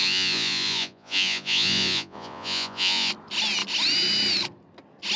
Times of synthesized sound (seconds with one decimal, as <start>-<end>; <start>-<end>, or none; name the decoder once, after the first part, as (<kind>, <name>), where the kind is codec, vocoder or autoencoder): 0.0-3.1 (vocoder, Vocos)

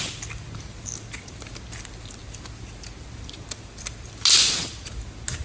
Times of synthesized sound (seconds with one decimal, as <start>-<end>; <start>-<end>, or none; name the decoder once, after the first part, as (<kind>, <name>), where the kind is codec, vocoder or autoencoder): none